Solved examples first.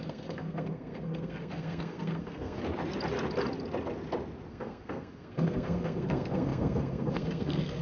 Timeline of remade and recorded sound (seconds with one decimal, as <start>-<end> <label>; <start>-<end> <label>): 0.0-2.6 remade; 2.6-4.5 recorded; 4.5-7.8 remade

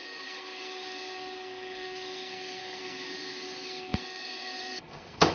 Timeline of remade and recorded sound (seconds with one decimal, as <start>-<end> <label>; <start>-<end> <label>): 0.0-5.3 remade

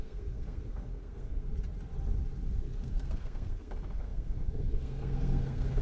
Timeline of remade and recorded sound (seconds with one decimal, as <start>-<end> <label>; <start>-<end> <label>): 0.0-1.5 remade; 1.5-2.6 recorded; 2.6-5.8 remade